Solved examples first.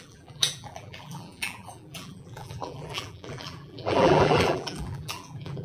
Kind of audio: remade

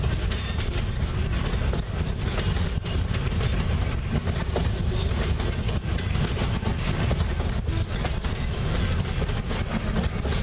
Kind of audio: recorded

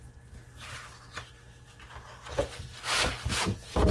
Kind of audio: recorded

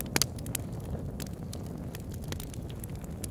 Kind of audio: recorded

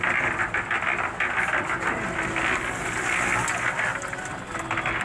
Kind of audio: recorded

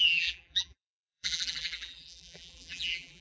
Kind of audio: remade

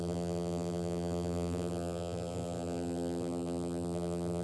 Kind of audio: remade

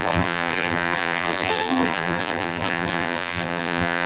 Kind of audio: remade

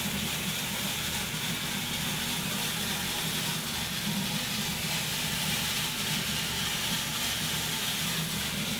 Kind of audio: recorded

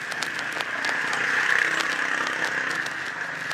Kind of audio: recorded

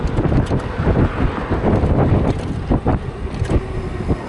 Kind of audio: recorded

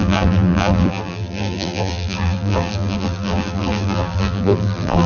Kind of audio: remade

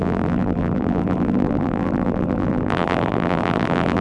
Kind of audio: remade